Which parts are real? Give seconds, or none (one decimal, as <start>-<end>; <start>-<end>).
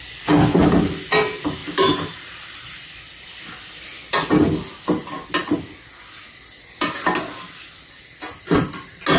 0.0-1.6; 2.9-9.2